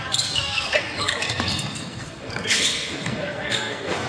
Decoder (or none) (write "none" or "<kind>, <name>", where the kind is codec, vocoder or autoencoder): codec, SNAC